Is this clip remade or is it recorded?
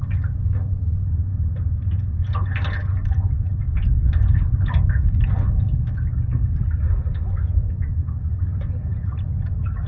recorded